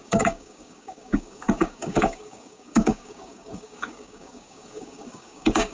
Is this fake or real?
fake